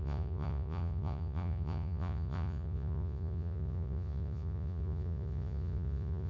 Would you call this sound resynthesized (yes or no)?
yes